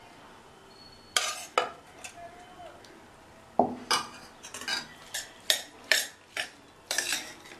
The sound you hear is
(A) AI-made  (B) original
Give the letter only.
B